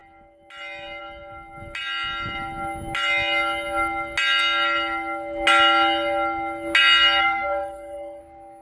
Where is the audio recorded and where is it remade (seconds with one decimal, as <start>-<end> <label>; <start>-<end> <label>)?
0.0-7.2 recorded; 7.2-8.2 remade; 8.2-8.6 recorded